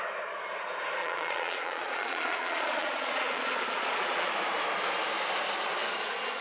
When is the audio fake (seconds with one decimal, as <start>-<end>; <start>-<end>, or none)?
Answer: 1.0-4.3